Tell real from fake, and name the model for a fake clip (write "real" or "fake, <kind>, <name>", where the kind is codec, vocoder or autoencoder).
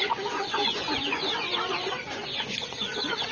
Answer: fake, vocoder, Vocos